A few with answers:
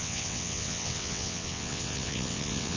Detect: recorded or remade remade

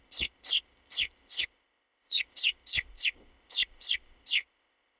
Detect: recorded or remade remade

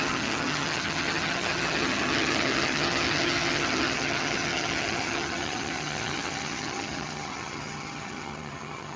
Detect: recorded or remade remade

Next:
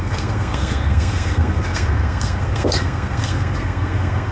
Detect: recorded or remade remade